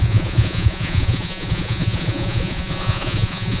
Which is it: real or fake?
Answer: fake